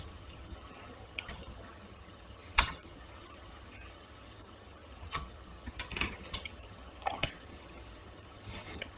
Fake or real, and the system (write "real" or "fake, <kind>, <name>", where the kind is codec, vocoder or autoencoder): fake, vocoder, HiFi-GAN